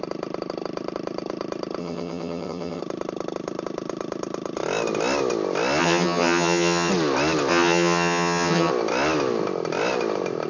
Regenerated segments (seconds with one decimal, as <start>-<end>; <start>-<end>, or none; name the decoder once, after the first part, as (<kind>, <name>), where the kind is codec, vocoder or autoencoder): 1.8-2.8 (vocoder, HiFi-GAN); 5.8-6.9; 7.5-8.7